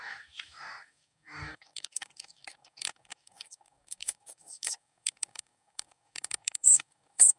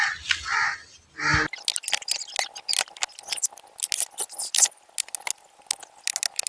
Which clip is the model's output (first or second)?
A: first